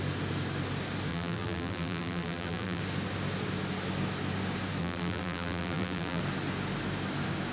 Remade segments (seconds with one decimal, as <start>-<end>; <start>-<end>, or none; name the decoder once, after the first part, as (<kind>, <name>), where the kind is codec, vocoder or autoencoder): 1.1-2.8 (vocoder, BigVGAN v2); 4.8-6.2